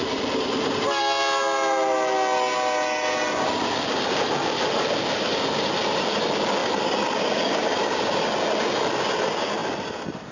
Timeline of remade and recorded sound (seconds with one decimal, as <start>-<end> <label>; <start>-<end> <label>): 0.0-1.0 remade; 1.0-10.3 recorded

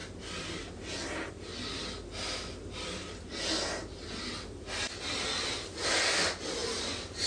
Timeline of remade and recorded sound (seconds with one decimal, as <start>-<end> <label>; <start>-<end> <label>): 0.0-7.3 recorded

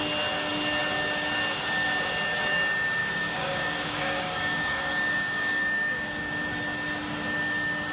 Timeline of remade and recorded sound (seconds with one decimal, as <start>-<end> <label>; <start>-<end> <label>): 0.0-3.0 recorded; 3.0-6.2 remade; 6.2-7.9 recorded

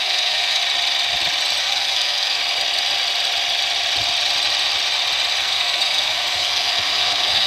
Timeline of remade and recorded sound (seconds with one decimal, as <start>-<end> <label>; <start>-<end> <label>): 0.0-0.6 remade; 0.6-1.6 recorded; 1.6-2.4 remade; 2.4-5.4 recorded; 5.4-7.5 remade